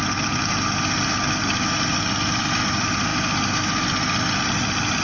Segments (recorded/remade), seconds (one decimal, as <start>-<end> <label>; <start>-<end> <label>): 0.0-5.0 recorded